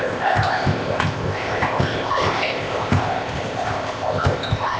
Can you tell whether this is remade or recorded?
remade